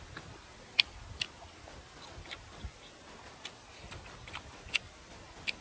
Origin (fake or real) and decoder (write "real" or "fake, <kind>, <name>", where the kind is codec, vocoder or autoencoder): real